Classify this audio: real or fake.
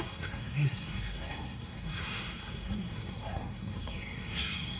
fake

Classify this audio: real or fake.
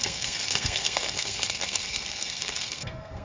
fake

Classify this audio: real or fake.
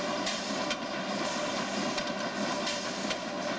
real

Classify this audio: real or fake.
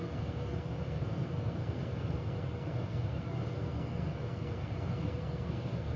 fake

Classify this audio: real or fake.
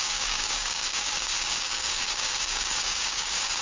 fake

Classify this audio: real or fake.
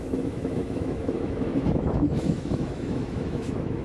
fake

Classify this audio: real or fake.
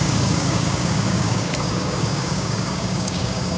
fake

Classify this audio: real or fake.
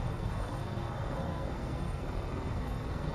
fake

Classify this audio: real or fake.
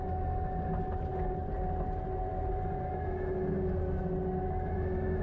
real